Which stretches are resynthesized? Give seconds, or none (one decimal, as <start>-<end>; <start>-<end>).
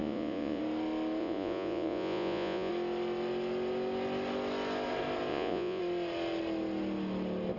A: 0.0-0.6; 1.2-2.7; 5.3-5.8